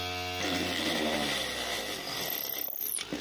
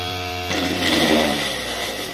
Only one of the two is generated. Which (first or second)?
second